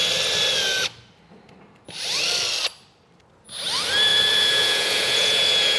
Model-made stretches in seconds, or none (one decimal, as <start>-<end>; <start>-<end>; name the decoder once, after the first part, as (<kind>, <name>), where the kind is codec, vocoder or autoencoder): 4.1-5.8 (vocoder, Vocos)